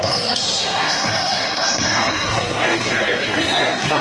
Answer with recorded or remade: remade